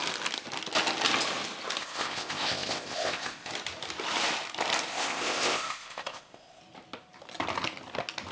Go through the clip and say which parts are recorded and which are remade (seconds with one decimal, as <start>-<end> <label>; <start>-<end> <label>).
0.0-1.8 recorded; 1.8-3.5 remade; 3.5-4.9 recorded; 4.9-6.6 remade; 6.6-8.3 recorded